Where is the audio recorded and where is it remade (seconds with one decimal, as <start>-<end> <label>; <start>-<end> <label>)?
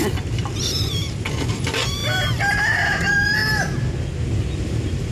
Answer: 0.0-3.4 remade; 3.4-4.4 recorded; 4.4-5.1 remade